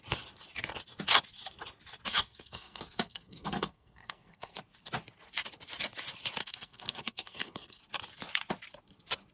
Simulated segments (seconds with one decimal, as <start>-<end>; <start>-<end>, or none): 2.1-4.6; 6.4-7.8